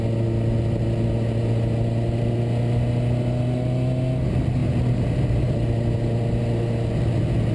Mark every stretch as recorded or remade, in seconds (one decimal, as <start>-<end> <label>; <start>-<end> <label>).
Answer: 0.0-7.5 recorded